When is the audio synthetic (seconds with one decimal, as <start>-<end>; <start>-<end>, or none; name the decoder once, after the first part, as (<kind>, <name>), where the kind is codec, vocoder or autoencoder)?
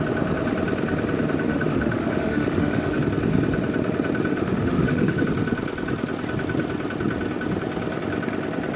1.5-3.0 (autoencoder, DAC-VAE); 4.3-5.2